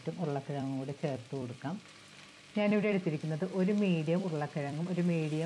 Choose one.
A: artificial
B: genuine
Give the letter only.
A